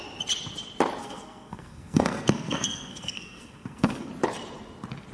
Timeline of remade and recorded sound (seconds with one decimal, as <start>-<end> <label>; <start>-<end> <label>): 0.0-1.0 recorded; 1.0-4.1 remade; 4.1-5.1 recorded